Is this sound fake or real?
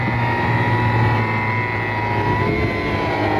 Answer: real